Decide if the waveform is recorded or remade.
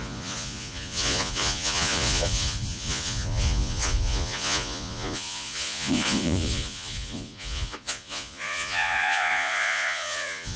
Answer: remade